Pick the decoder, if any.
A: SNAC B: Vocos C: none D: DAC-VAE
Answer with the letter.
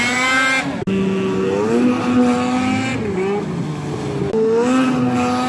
C